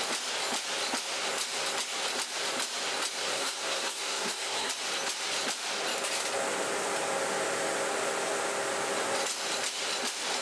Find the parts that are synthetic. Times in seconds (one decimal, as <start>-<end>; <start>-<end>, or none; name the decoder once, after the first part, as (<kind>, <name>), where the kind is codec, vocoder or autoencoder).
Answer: 3.2-4.7 (codec, SNAC)